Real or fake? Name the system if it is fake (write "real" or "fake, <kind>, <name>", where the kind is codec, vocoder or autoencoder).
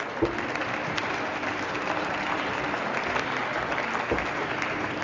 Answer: real